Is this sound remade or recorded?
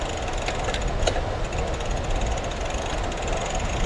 recorded